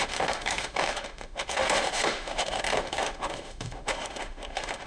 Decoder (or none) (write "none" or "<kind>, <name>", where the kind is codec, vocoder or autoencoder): autoencoder, DAC-VAE